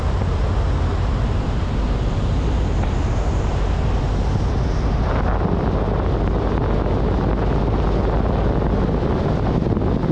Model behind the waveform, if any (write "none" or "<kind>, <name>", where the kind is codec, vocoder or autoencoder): none